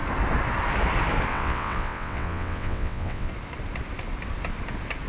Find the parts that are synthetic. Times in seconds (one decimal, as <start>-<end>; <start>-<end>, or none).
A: 1.3-3.3